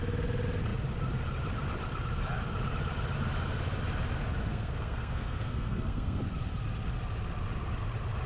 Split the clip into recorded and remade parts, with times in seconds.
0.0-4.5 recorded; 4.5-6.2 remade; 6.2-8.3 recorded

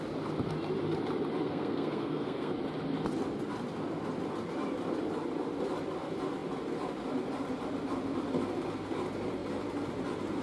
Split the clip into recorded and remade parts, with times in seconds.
0.0-1.4 recorded; 1.4-2.5 remade; 2.5-10.4 recorded

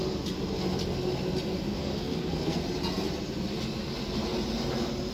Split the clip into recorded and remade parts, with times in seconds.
0.0-1.7 recorded; 1.7-2.6 remade; 2.6-5.1 recorded

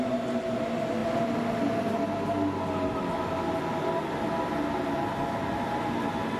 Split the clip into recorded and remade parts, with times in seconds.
0.0-6.4 recorded

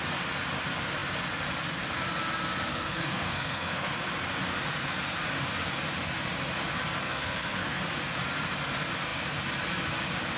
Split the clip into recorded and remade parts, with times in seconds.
0.0-2.7 recorded; 2.7-3.9 remade; 3.9-7.0 recorded; 7.0-7.8 remade; 7.8-10.4 recorded

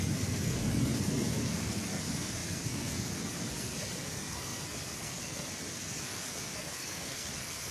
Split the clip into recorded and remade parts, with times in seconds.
0.0-7.7 remade

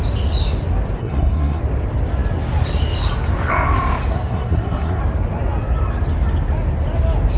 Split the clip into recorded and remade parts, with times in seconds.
0.0-1.0 recorded; 1.0-1.6 remade; 1.6-4.1 recorded; 4.1-5.0 remade; 5.0-7.4 recorded

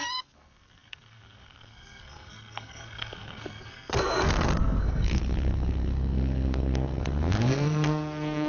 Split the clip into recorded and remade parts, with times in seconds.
0.0-8.5 remade